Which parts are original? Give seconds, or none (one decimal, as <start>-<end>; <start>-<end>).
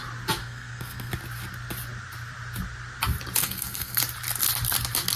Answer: 0.0-0.4; 1.1-3.4; 4.0-5.2